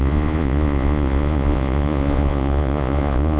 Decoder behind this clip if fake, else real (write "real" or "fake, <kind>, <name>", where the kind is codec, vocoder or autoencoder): fake, vocoder, Vocos